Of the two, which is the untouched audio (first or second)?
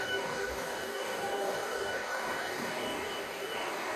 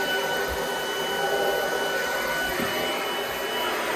second